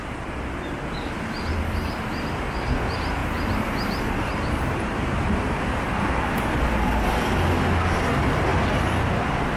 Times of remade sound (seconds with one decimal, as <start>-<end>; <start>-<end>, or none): 1.5-2.4; 3.2-6.6